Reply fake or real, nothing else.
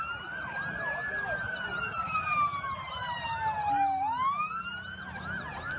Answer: real